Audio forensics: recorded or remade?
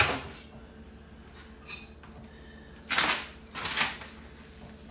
recorded